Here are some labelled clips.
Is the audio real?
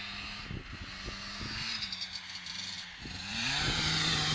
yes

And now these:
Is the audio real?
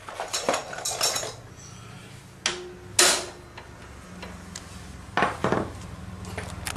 yes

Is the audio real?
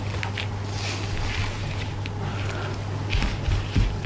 yes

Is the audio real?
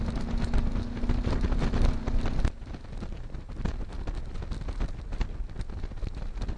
yes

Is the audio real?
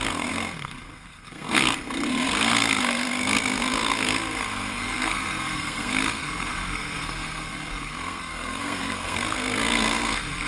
no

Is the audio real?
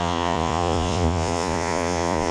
no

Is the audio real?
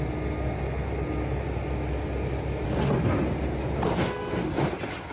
yes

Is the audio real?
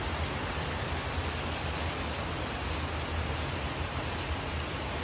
yes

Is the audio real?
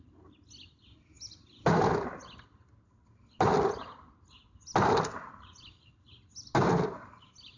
yes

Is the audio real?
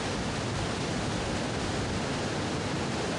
yes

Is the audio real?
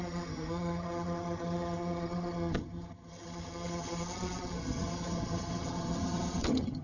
no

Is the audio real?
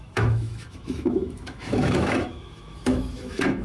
no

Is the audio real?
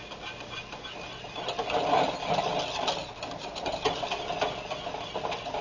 yes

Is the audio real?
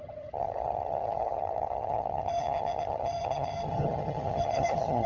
no